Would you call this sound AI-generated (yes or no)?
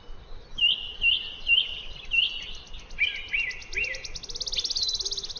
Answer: no